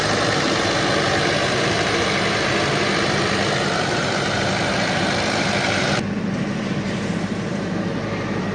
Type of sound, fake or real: fake